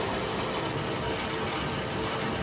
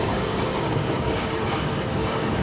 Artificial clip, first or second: second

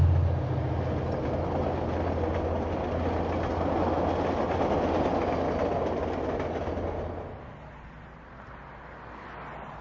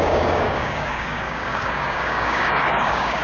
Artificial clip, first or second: second